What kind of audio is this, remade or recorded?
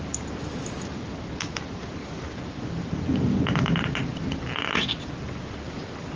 recorded